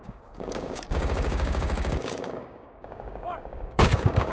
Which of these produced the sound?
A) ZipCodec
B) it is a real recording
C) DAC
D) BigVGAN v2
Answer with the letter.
C